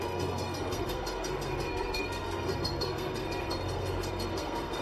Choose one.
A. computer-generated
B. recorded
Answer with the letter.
A